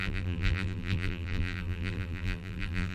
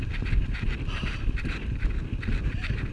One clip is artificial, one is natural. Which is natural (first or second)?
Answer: second